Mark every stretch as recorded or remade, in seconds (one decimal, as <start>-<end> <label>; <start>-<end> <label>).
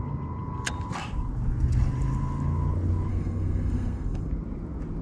0.0-3.1 recorded; 3.1-4.3 remade; 4.3-5.0 recorded